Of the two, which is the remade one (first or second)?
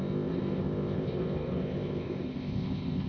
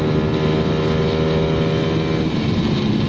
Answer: first